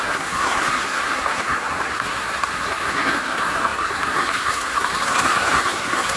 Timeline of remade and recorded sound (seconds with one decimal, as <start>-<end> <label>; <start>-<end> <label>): 0.0-6.2 remade